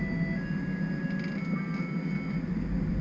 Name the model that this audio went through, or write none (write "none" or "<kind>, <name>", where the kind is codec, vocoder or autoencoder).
none